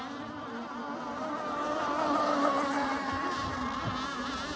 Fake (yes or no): no